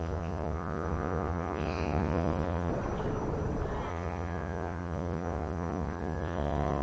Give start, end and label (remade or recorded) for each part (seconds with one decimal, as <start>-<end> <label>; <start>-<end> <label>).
0.0-2.7 remade; 2.7-3.9 recorded; 3.9-6.8 remade